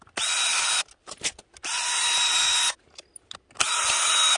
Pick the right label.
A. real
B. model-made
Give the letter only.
A